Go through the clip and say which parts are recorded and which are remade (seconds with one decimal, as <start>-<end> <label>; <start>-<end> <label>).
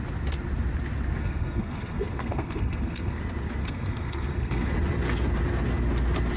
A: 0.0-1.2 recorded; 1.2-3.2 remade; 3.2-3.6 recorded; 3.6-4.7 remade; 4.7-6.4 recorded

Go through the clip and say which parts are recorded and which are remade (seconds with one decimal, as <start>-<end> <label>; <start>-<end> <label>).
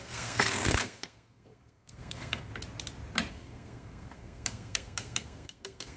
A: 0.0-2.5 remade; 2.5-3.3 recorded; 3.3-6.0 remade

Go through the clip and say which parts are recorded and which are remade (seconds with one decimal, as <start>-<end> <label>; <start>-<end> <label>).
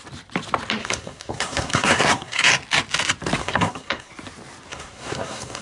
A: 0.0-0.8 recorded; 0.8-2.5 remade; 2.5-3.4 recorded; 3.4-4.1 remade; 4.1-4.7 recorded; 4.7-5.6 remade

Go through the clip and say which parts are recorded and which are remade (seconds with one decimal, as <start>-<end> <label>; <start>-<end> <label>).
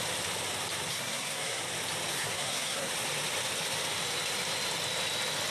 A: 0.0-0.9 recorded; 0.9-1.6 remade; 1.6-2.1 recorded; 2.1-2.9 remade; 2.9-5.5 recorded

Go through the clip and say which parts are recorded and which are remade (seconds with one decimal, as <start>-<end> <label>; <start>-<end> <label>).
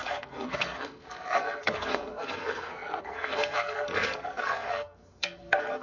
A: 0.0-5.8 remade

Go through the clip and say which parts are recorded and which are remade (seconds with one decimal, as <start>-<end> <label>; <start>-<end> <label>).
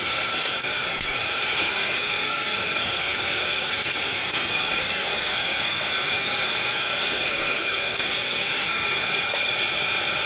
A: 0.0-9.5 remade; 9.5-10.3 recorded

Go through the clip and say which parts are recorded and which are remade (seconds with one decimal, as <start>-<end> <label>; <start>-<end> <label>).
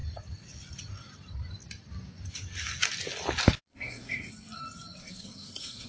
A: 0.0-3.7 recorded; 3.7-4.3 remade; 4.3-5.0 recorded; 5.0-5.9 remade